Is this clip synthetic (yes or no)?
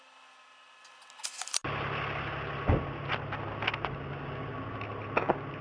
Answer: no